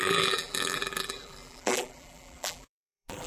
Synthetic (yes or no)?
yes